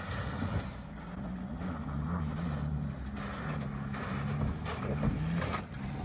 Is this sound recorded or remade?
recorded